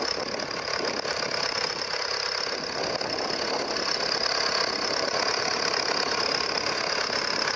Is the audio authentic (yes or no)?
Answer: yes